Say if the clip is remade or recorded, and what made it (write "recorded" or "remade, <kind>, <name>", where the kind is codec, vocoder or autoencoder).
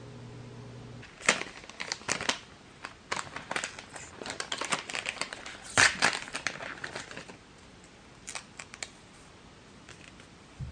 recorded